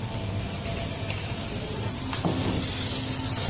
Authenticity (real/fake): real